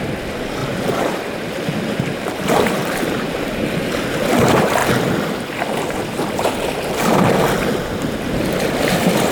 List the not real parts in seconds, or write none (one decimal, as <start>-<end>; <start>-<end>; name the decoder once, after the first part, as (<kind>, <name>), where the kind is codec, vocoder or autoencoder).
0.6-3.9 (vocoder, BigVGAN v2)